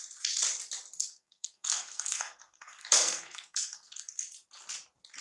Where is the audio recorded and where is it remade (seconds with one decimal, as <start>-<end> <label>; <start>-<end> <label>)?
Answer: 0.0-1.0 recorded; 1.0-4.1 remade; 4.1-5.2 recorded